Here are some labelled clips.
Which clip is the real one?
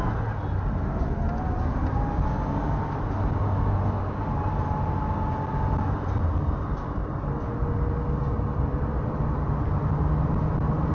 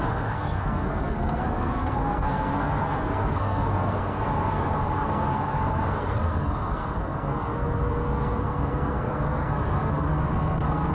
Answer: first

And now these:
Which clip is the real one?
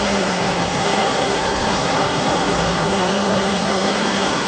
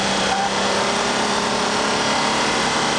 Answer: second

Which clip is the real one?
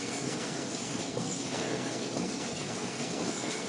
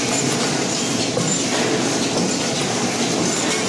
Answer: second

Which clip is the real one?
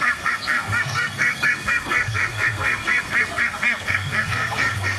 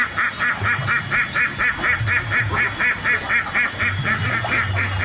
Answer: second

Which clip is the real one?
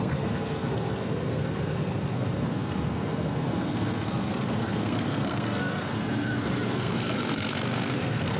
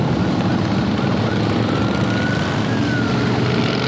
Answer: second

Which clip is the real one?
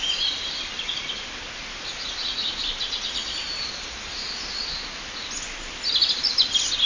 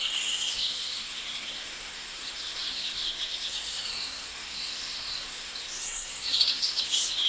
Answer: first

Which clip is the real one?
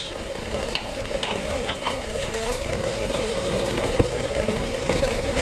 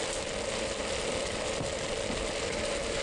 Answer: second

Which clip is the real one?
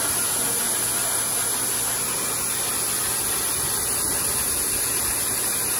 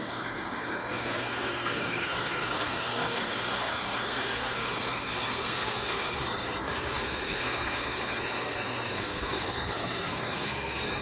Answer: first